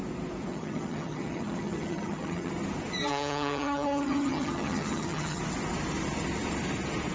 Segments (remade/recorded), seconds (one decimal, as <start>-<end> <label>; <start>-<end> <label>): 0.0-0.5 recorded; 0.5-2.5 remade; 2.5-3.1 recorded; 3.1-5.4 remade; 5.4-7.1 recorded